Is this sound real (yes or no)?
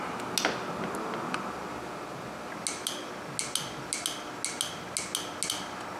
yes